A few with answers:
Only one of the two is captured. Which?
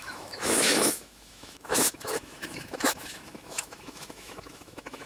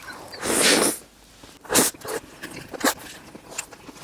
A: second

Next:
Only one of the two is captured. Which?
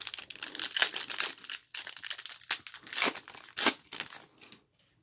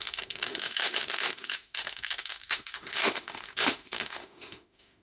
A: first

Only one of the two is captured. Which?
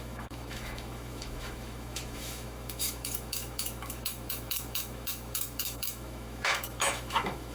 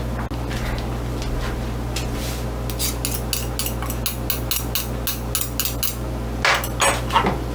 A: second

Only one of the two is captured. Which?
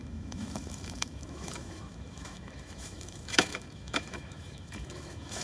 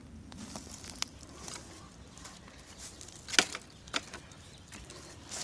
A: second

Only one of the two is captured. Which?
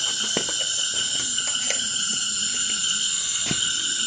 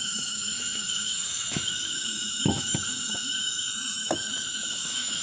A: first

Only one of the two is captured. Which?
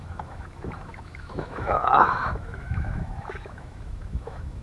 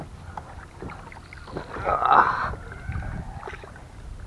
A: second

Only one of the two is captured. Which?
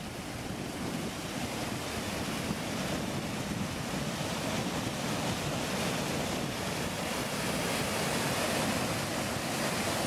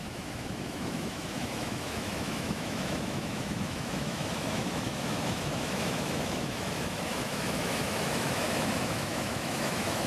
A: first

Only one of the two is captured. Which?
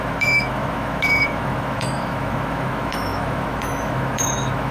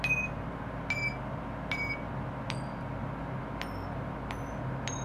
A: second